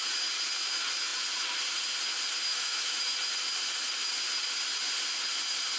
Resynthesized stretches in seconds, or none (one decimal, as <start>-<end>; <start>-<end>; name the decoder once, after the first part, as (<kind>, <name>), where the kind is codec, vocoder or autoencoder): 2.5-3.0 (autoencoder, DAC-VAE)